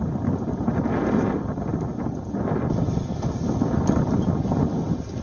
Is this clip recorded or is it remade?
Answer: recorded